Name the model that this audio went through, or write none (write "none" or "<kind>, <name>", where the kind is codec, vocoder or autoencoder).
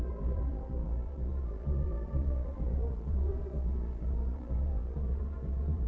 vocoder, Vocos